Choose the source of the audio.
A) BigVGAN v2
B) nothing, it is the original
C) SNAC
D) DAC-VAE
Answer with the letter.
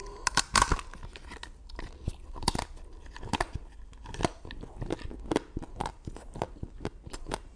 B